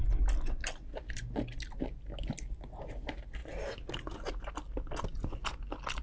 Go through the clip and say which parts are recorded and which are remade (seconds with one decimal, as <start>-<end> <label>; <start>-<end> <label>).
0.0-6.0 recorded